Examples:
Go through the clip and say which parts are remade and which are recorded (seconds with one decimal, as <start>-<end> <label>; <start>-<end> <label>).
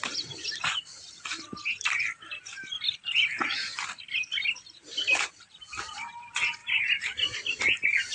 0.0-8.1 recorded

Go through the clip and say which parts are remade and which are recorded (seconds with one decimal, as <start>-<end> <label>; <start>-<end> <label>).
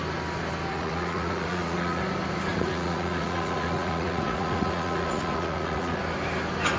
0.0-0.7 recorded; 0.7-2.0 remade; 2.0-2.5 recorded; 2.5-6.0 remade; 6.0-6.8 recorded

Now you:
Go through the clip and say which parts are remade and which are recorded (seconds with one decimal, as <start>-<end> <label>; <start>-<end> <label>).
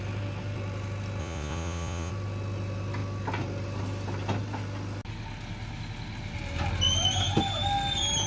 0.0-1.2 recorded; 1.2-2.1 remade; 2.1-8.3 recorded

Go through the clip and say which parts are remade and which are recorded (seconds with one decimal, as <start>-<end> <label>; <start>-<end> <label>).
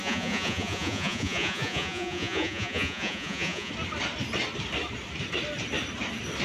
0.0-3.7 remade; 3.7-6.4 recorded